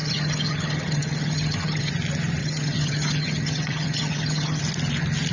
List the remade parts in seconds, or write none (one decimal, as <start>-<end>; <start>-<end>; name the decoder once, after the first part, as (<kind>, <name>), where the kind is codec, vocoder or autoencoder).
0.0-1.9 (vocoder, HiFi-GAN); 2.4-4.6